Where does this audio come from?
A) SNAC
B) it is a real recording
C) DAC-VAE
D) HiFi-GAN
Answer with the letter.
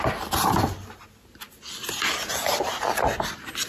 B